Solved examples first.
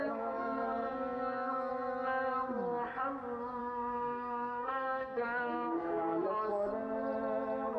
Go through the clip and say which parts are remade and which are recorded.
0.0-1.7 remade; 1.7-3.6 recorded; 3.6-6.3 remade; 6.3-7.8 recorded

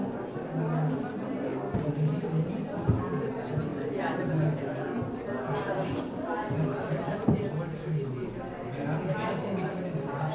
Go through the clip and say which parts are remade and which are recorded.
0.0-10.3 recorded